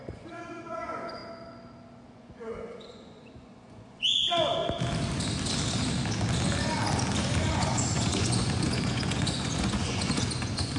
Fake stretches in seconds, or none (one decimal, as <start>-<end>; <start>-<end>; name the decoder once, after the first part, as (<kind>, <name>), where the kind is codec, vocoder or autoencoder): 0.0-1.2 (vocoder, Vocos); 2.1-4.6; 7.5-10.8

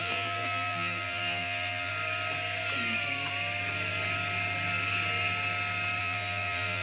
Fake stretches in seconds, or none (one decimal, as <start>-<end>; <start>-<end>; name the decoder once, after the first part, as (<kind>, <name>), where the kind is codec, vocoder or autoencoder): 0.0-1.9 (vocoder, BigVGAN v2); 6.0-6.8